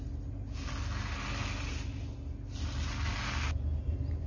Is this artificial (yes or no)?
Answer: no